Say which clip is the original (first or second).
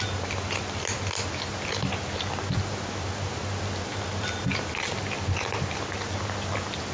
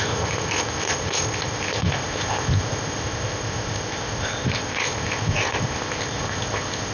first